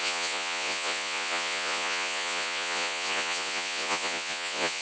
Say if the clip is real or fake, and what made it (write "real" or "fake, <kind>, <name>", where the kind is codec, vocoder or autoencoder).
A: fake, vocoder, Vocos